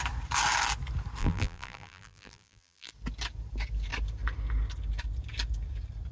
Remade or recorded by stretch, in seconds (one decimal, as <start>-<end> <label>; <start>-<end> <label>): 0.0-1.2 recorded; 1.2-2.9 remade; 2.9-6.1 recorded